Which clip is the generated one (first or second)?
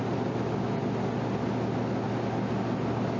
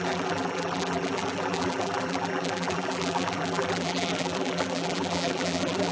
second